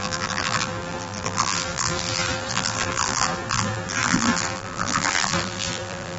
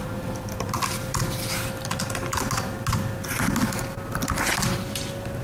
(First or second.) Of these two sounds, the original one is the second